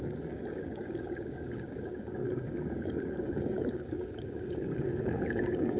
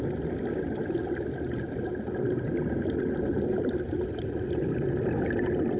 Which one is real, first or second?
second